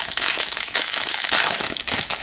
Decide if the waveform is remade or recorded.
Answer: remade